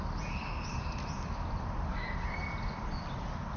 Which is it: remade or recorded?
recorded